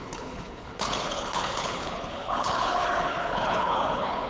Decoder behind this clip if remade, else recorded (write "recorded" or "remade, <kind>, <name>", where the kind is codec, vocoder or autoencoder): remade, codec, HILCodec